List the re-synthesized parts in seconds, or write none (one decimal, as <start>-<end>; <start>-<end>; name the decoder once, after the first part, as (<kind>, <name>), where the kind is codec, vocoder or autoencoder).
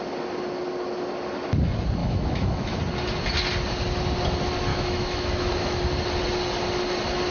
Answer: 2.0-2.8 (autoencoder, DAC-VAE); 4.7-5.8